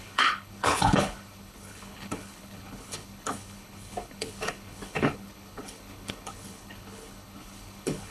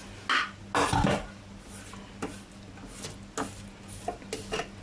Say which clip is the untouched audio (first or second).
second